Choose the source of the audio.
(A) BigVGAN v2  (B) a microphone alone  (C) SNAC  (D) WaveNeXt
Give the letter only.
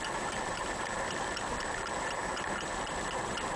A